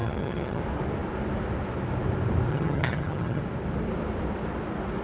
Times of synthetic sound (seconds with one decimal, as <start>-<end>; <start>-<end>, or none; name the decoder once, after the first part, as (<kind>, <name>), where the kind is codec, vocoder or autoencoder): 0.0-0.6 (vocoder, HiFi-GAN); 2.5-3.4